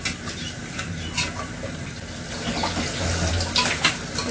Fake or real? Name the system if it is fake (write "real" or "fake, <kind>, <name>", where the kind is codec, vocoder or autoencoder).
real